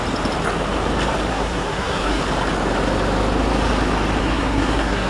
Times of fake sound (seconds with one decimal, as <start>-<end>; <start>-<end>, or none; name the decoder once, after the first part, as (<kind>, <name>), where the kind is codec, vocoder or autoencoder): 1.3-2.2 (codec, SNAC); 4.2-5.1